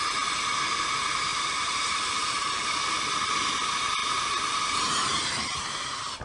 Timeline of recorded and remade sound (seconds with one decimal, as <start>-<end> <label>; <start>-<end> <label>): 0.0-1.3 recorded; 1.3-2.5 remade; 2.5-4.0 recorded; 4.0-5.6 remade; 5.6-6.2 recorded